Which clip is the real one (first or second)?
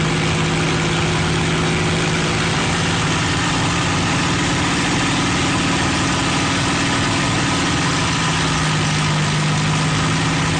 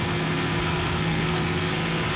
first